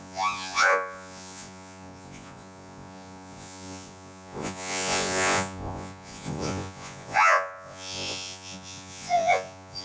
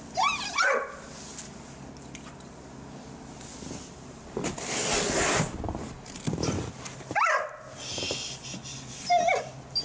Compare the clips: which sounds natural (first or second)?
second